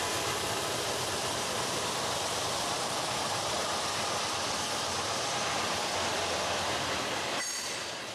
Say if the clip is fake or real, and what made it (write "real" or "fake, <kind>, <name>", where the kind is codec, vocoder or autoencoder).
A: fake, vocoder, BigVGAN v2